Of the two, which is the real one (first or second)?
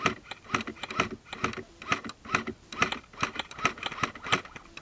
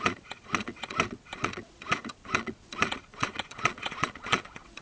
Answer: first